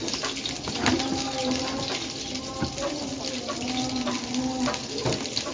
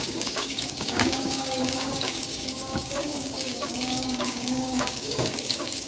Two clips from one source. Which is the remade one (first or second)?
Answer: second